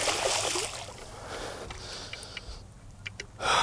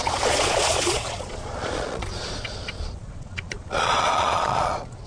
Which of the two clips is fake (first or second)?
second